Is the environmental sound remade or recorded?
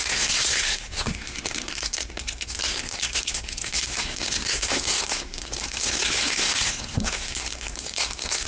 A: remade